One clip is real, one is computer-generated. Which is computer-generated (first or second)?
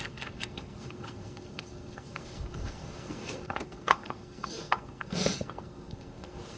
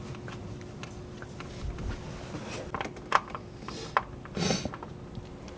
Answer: first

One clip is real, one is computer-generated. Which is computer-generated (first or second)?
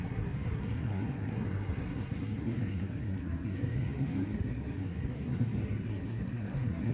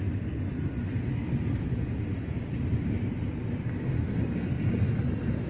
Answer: first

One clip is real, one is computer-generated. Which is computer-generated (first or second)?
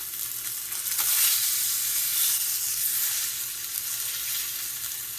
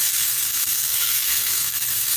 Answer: second